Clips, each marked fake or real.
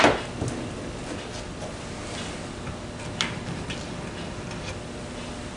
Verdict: real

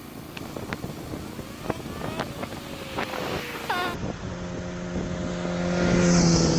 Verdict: real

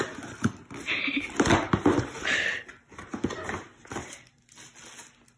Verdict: real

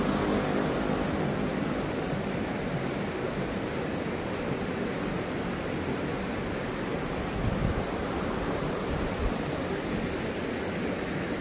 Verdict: real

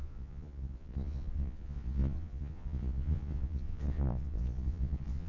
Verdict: fake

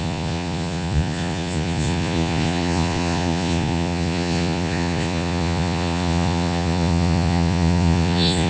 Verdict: fake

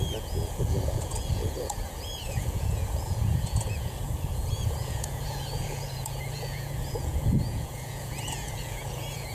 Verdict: fake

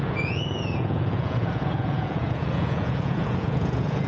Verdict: fake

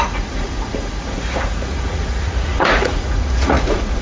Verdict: fake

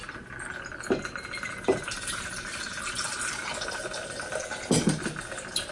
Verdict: real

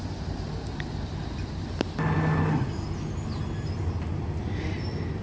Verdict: real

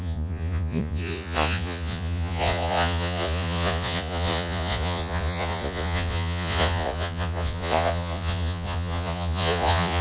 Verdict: fake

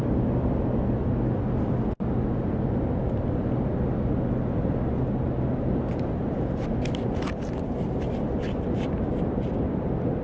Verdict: real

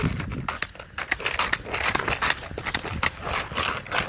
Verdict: real